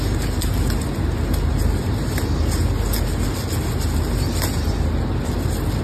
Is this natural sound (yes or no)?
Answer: yes